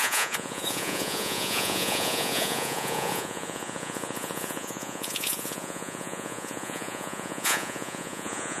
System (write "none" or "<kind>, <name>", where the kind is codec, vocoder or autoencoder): vocoder, Vocos